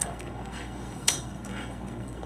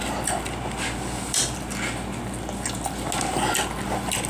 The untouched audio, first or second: second